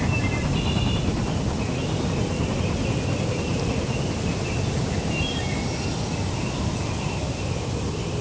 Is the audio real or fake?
real